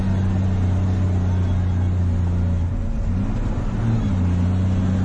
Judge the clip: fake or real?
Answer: real